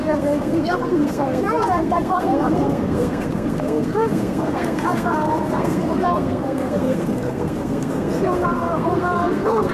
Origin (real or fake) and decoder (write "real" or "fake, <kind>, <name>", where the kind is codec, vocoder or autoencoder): fake, codec, SNAC